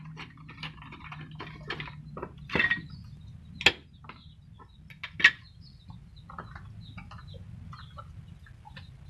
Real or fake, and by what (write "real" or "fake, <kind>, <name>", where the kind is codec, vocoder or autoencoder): real